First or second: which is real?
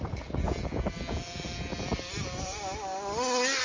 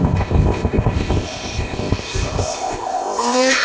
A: first